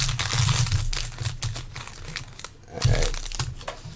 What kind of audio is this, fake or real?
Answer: real